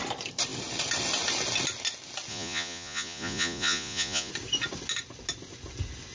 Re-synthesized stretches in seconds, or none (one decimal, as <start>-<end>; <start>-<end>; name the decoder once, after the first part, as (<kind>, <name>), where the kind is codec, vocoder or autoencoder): 2.3-4.3 (vocoder, Vocos)